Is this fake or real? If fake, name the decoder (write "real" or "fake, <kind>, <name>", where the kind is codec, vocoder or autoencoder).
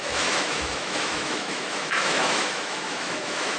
fake, autoencoder, DAC-VAE